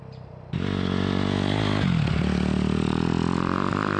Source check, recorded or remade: recorded